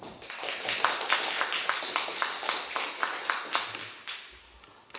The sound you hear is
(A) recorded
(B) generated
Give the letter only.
A